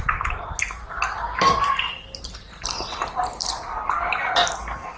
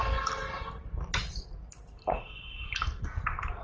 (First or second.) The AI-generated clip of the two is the first